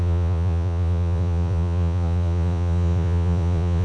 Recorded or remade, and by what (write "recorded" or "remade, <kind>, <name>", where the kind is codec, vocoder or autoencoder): remade, vocoder, Vocos